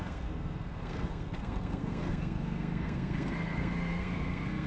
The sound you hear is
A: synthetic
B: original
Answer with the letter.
A